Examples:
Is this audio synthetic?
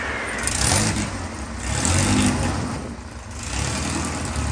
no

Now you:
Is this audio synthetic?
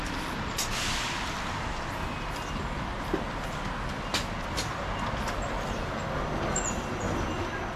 no